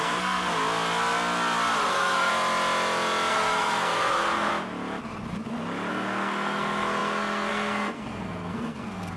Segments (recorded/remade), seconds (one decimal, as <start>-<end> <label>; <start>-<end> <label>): 0.0-0.5 remade; 0.5-1.9 recorded; 1.9-2.3 remade; 2.3-3.3 recorded; 3.3-4.5 remade; 4.5-5.9 recorded; 5.9-9.2 remade